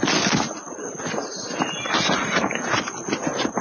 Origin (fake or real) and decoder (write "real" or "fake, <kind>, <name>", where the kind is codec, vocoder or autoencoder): real